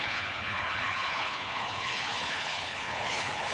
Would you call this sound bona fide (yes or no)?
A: no